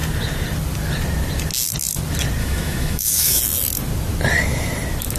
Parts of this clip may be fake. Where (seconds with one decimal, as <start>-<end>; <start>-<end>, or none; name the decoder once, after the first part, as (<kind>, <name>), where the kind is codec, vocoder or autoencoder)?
2.4-3.4 (autoencoder, DAC-VAE)